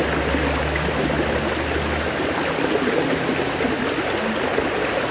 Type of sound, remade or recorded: recorded